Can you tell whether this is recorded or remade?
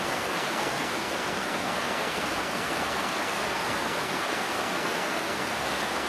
remade